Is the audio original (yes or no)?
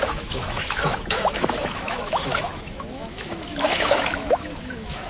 no